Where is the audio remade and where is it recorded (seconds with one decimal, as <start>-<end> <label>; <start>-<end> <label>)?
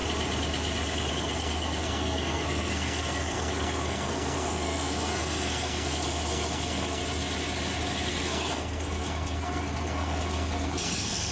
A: 0.0-1.1 recorded; 1.1-7.0 remade; 7.0-8.1 recorded; 8.1-11.3 remade